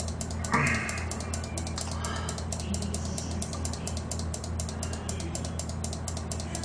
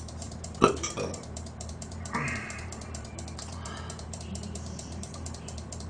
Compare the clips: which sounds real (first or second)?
first